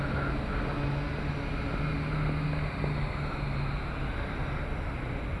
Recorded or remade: recorded